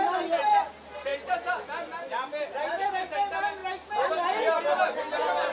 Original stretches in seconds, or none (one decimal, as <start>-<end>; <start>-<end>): 0.0-5.5